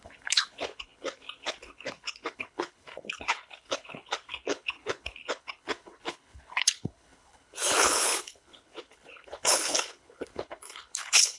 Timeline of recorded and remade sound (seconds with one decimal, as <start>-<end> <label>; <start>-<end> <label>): 0.0-11.4 remade